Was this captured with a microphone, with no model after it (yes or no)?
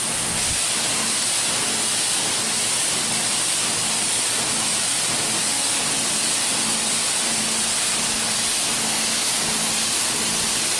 yes